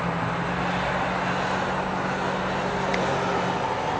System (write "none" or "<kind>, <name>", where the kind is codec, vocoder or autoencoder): none